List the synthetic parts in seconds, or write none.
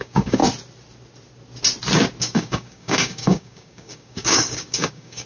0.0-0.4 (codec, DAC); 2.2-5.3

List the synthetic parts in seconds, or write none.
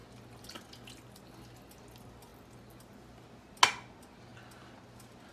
none